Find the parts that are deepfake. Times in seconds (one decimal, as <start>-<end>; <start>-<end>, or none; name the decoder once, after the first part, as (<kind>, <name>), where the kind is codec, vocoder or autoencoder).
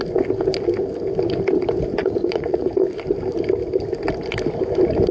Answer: 2.0-2.9 (vocoder, Vocos)